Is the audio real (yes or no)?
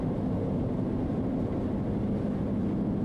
yes